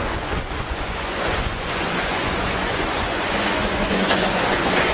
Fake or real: fake